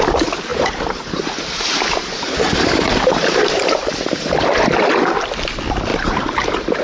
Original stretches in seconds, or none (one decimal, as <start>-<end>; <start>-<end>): 0.0-0.5; 4.3-5.9